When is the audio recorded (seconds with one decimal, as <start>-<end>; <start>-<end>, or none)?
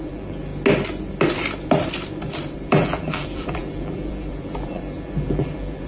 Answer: 0.5-2.7